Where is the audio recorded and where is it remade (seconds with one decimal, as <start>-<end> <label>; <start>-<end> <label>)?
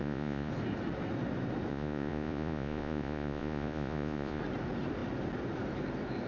0.0-0.5 remade; 0.5-1.7 recorded; 1.7-4.4 remade; 4.4-6.3 recorded